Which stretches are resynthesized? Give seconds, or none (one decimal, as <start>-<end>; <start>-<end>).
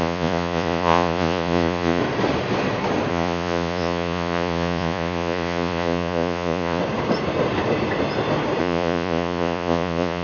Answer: 0.0-2.0; 3.1-6.8; 8.6-10.2